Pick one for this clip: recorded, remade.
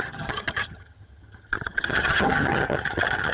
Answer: remade